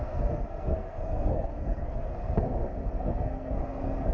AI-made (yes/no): yes